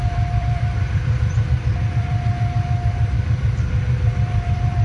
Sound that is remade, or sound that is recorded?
remade